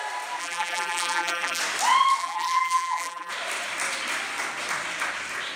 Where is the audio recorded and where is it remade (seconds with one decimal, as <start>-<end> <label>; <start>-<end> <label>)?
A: 0.0-0.4 recorded; 0.4-1.6 remade; 1.6-2.2 recorded; 2.2-3.3 remade; 3.3-5.6 recorded